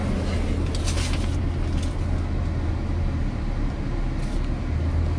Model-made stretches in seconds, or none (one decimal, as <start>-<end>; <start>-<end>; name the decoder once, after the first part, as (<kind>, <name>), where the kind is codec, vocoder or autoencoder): none